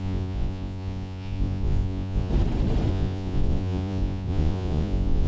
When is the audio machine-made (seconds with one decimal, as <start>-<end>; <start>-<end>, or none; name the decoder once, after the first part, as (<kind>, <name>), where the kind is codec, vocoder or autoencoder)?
0.0-2.3 (vocoder, Vocos); 2.9-5.3